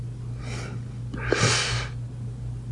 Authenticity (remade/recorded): recorded